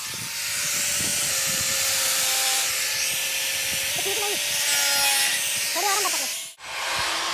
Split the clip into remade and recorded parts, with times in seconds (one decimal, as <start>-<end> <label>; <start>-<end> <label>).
0.0-1.1 recorded; 1.1-2.7 remade; 2.7-7.3 recorded